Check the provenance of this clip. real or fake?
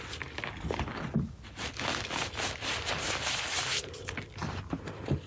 real